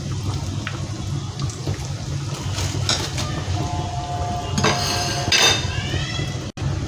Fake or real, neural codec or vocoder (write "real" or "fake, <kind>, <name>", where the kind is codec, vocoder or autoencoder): real